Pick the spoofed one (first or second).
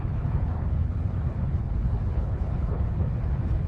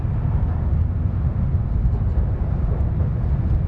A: first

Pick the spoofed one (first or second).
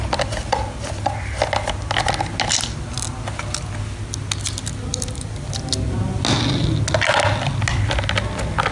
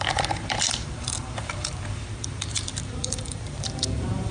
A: second